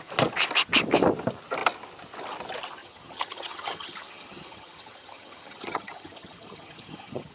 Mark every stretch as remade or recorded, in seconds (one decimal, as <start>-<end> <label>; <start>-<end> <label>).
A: 0.0-2.8 recorded; 2.8-7.3 remade